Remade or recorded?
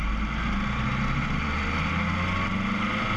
recorded